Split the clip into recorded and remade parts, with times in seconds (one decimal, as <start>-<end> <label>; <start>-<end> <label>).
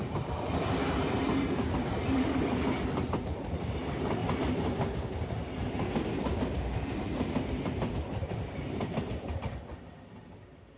0.0-10.8 recorded